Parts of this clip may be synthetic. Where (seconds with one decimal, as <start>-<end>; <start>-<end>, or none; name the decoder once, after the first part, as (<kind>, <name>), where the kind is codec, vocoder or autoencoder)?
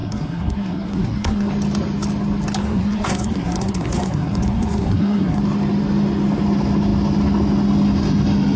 0.0-1.5 (codec, SNAC); 2.6-5.4